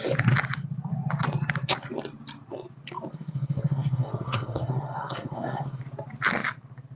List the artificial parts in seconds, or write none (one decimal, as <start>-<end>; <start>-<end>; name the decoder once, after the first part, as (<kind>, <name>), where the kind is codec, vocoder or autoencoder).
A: 3.1-5.8 (codec, SNAC)